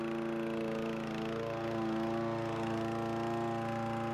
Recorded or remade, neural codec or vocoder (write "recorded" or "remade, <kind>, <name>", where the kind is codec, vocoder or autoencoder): recorded